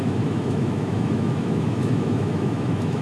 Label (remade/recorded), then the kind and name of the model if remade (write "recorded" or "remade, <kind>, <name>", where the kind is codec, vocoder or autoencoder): remade, autoencoder, DAC-VAE